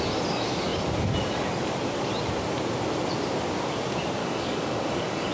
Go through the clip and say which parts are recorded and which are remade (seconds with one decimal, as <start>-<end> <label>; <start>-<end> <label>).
0.0-4.2 recorded; 4.2-5.3 remade